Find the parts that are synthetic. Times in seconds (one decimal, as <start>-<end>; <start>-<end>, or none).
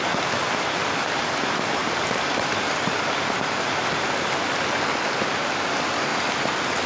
1.8-4.6